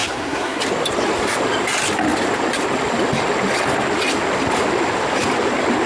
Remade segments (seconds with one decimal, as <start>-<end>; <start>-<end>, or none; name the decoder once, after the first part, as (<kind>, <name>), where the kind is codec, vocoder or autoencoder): 0.0-0.6 (codec, SNAC)